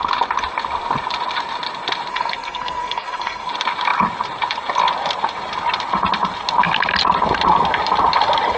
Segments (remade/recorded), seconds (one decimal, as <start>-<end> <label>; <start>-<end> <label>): 0.0-2.1 recorded; 2.1-3.5 remade; 3.5-8.6 recorded

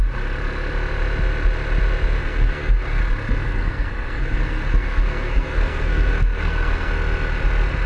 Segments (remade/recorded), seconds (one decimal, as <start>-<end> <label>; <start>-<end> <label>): 0.0-2.2 recorded; 2.2-3.0 remade; 3.0-3.4 recorded; 3.4-6.9 remade; 6.9-7.9 recorded